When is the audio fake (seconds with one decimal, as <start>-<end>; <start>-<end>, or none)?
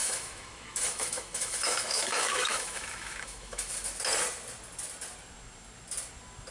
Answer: 0.0-3.7